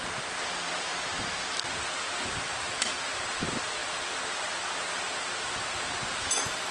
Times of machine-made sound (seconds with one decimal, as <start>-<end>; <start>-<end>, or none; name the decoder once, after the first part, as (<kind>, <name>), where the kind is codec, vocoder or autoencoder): 0.0-0.9 (vocoder, BigVGAN v2); 3.2-6.7